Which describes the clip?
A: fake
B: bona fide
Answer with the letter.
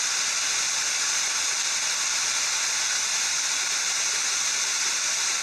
B